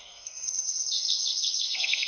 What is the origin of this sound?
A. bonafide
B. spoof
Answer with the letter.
B